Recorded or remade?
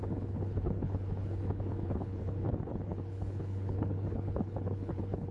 remade